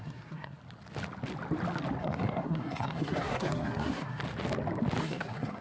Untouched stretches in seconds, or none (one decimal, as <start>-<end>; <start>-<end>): 0.6-2.0; 4.2-5.0